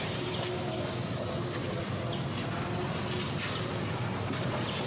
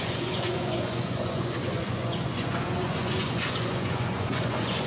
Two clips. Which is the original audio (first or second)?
first